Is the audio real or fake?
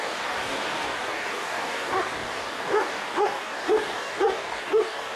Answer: fake